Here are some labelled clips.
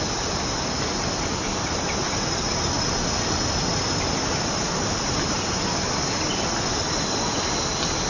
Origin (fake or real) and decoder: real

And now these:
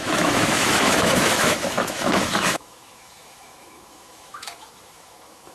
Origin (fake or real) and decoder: fake, autoencoder, DAC-VAE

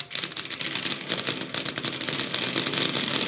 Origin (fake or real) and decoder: real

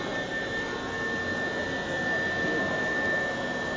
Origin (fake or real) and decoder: real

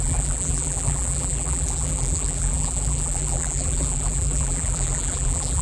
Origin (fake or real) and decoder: fake, vocoder, BigVGAN v2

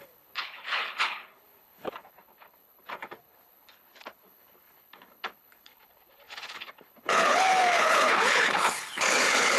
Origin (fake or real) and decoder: fake, codec, HILCodec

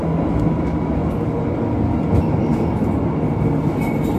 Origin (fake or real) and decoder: real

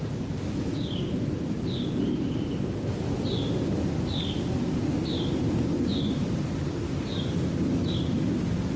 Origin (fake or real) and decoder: real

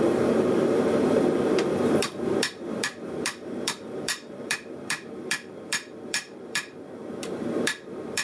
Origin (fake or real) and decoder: fake, vocoder, BigVGAN v2